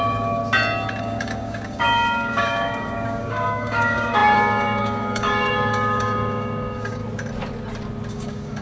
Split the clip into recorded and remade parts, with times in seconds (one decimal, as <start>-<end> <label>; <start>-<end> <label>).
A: 0.0-0.4 remade; 0.4-1.0 recorded; 1.0-7.0 remade; 7.0-8.1 recorded; 8.1-8.6 remade